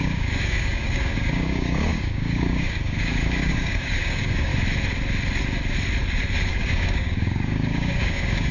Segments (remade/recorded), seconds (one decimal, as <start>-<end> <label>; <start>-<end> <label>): 0.0-4.5 remade; 4.5-6.5 recorded; 6.5-8.5 remade